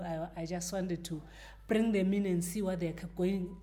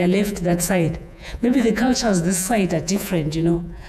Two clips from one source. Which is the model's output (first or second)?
second